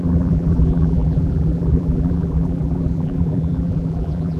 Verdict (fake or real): fake